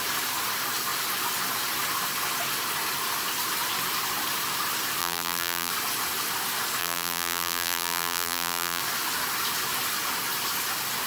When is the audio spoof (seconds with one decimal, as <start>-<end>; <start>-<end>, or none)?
5.0-5.7; 6.8-8.8